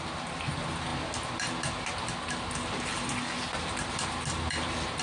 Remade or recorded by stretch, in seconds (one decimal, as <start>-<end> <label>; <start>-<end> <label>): 0.0-5.0 recorded